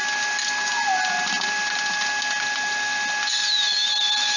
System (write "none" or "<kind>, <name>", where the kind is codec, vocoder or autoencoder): none